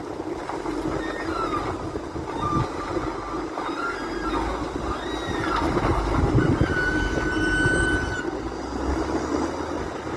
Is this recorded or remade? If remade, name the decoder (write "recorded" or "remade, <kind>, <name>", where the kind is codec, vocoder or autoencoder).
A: recorded